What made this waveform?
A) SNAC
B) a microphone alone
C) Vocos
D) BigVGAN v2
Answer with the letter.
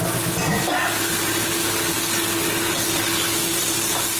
B